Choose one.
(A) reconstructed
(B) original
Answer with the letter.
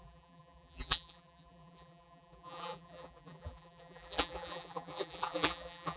A